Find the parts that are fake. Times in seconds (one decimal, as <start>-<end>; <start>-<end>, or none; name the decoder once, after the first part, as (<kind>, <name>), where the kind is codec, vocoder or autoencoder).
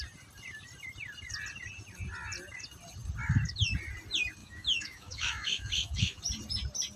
4.4-6.2 (autoencoder, DAC-VAE)